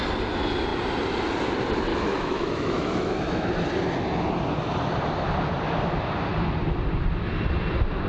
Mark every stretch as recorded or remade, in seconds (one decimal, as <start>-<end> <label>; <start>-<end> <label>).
0.0-1.9 recorded; 1.9-3.5 remade; 3.5-8.1 recorded